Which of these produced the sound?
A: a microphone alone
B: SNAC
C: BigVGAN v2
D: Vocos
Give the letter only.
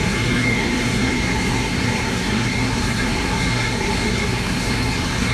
B